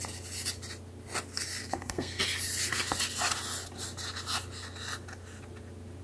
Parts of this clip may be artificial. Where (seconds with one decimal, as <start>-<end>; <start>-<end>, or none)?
1.6-2.2